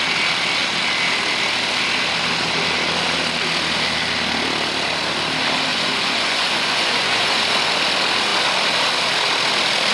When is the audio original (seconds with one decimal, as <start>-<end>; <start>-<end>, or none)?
0.0-5.7; 7.8-9.9